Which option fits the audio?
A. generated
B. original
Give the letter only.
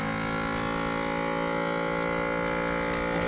B